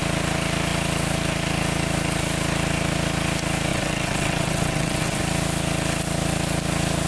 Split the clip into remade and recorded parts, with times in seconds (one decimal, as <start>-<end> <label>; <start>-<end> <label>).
0.0-3.7 recorded; 3.7-5.2 remade; 5.2-7.1 recorded